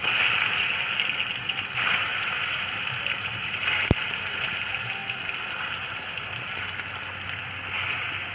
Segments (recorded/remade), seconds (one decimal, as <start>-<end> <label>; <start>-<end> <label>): 0.0-2.1 recorded; 2.1-4.5 remade; 4.5-8.3 recorded